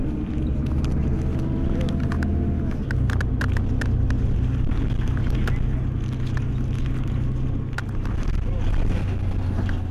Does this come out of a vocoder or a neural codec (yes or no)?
no